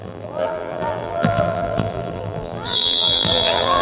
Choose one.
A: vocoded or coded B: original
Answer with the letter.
A